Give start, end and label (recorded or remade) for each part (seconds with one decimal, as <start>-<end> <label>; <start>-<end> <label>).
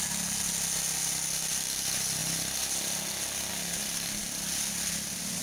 0.0-5.4 recorded